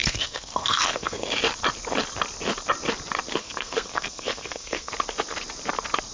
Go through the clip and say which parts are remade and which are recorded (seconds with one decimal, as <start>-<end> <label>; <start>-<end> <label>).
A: 0.0-1.3 remade; 1.3-3.4 recorded; 3.4-4.9 remade; 4.9-6.1 recorded